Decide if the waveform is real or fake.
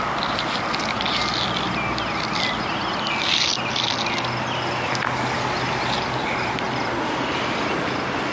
real